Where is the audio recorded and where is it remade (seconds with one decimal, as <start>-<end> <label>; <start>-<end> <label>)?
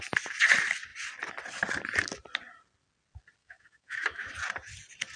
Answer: 0.0-3.4 recorded; 3.4-4.3 remade; 4.3-5.2 recorded